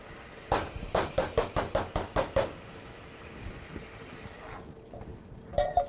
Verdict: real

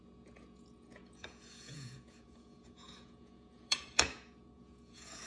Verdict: fake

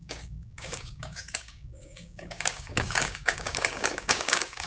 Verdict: fake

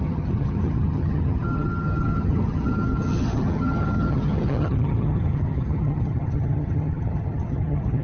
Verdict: fake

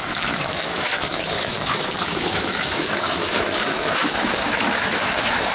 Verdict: fake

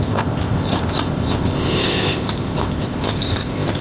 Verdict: fake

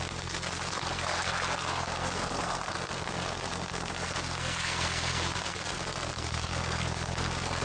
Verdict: fake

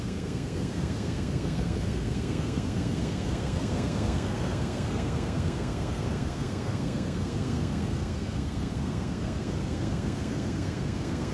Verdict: fake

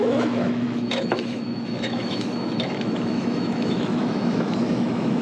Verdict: fake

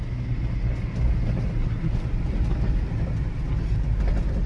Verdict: real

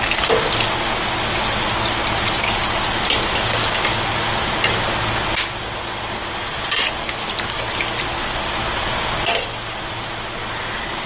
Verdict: real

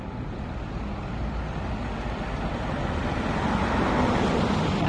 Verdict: real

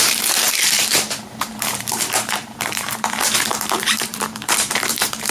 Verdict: fake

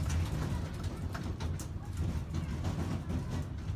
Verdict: real